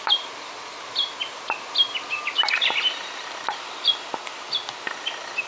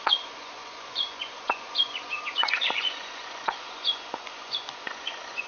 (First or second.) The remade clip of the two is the second